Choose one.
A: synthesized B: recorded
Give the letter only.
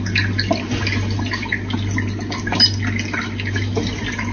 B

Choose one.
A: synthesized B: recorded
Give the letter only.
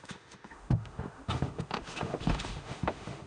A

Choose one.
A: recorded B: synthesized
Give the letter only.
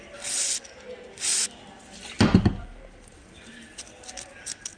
A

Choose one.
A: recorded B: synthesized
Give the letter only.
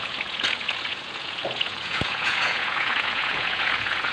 B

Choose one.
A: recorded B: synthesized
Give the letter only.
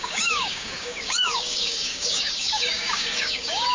B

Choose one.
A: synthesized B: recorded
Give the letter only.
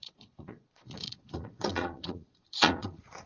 A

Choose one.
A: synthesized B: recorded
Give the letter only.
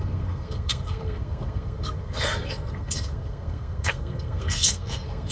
A